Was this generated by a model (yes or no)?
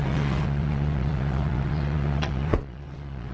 yes